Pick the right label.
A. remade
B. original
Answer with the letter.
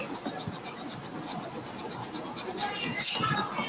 B